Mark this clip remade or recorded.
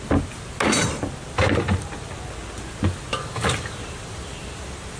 recorded